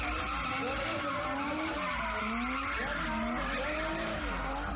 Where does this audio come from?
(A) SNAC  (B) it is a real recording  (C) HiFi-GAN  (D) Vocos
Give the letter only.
B